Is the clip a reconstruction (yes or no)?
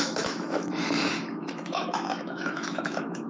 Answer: yes